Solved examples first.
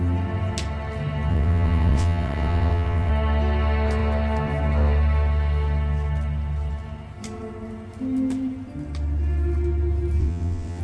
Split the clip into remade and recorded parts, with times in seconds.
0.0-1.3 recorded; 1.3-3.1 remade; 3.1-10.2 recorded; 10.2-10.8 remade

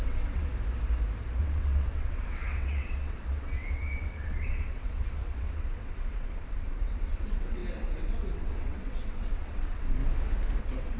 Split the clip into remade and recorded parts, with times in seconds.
0.0-0.5 remade; 0.5-1.4 recorded; 1.4-10.0 remade; 10.0-10.6 recorded; 10.6-11.0 remade